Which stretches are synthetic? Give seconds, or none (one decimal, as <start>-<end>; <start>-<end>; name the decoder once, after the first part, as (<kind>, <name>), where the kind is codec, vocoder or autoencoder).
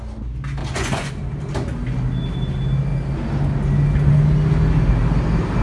0.6-1.1 (vocoder, Vocos)